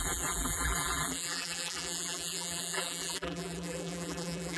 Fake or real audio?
fake